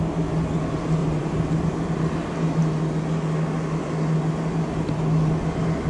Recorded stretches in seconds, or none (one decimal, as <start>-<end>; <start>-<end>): 0.0-1.0; 1.7-5.9

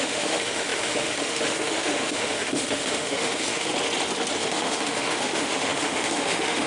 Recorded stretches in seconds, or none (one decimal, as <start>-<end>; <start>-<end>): 3.7-4.4

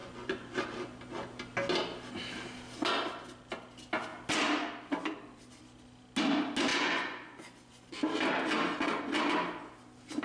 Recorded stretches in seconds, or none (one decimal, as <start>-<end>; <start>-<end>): 0.6-6.7; 7.9-10.2

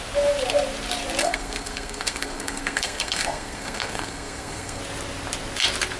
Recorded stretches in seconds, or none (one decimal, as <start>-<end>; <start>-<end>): 0.0-1.2; 4.8-6.0

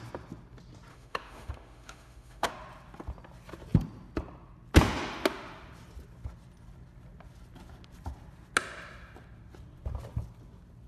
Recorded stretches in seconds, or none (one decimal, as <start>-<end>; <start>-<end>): 0.0-0.9; 2.5-10.9

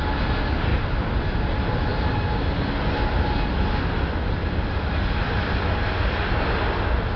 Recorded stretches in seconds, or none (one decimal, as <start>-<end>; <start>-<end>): 0.0-7.2

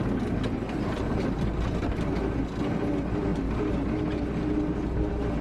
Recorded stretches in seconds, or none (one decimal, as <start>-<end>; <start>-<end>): 0.0-5.4